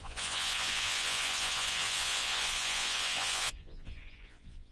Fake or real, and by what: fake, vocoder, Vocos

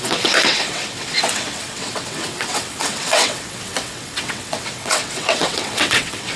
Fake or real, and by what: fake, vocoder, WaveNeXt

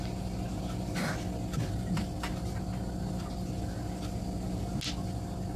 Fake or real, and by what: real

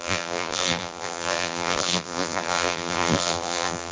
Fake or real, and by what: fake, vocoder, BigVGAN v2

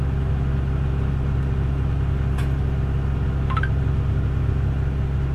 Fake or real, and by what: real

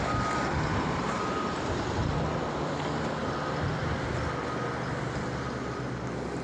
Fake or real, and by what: real